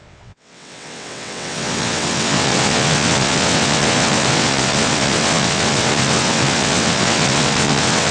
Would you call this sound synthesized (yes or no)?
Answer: yes